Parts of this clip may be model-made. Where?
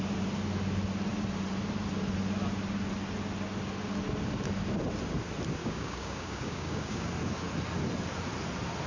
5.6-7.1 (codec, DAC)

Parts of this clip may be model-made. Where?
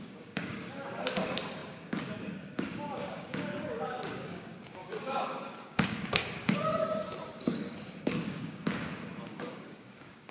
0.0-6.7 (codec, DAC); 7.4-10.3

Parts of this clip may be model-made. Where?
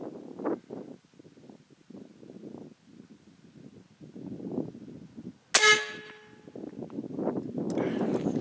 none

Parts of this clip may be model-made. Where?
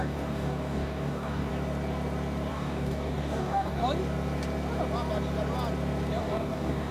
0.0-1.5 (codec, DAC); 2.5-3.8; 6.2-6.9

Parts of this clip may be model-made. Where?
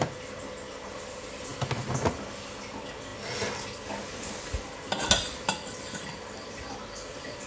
none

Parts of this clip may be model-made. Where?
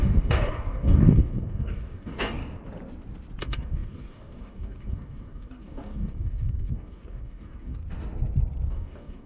0.0-2.4 (codec, DAC); 3.4-7.8; 8.7-9.3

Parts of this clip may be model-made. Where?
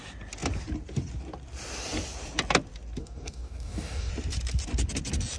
3.0-4.1 (codec, DAC)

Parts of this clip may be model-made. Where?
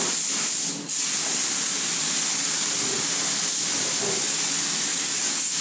4.9-5.6 (codec, DAC)